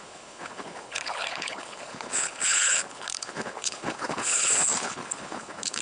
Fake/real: fake